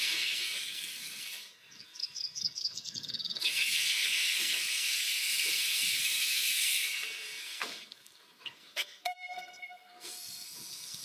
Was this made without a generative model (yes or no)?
no